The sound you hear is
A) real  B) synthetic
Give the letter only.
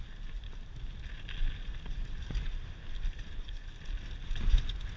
A